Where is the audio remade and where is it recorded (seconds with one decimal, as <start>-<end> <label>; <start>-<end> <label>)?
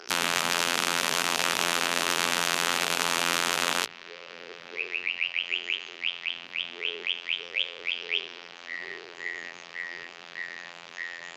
0.0-11.4 remade